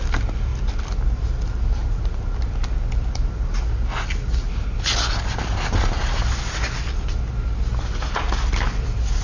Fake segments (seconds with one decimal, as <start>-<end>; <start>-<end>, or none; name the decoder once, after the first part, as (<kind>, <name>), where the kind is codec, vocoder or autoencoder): none